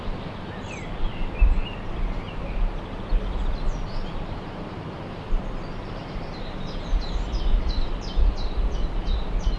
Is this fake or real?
real